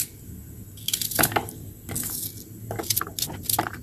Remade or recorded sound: recorded